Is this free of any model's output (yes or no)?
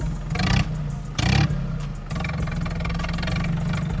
yes